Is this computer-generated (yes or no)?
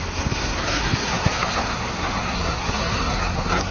yes